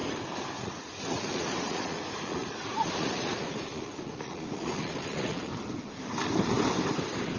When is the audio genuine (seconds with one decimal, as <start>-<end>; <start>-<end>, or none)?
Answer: 0.0-0.6; 5.5-7.4